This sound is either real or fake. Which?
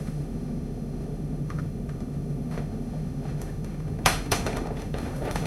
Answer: fake